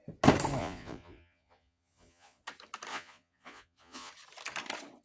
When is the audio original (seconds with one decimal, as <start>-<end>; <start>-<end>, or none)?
0.0-0.6; 2.4-2.9; 4.1-5.0